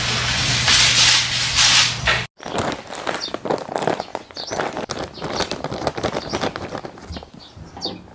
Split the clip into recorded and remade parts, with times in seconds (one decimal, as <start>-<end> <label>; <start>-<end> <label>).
0.0-4.1 recorded; 4.1-4.6 remade; 4.6-8.1 recorded